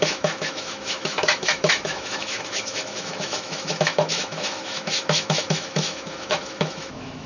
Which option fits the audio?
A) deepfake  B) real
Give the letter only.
A